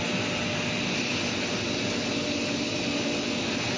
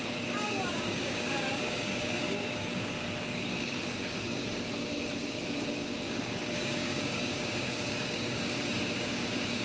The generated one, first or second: second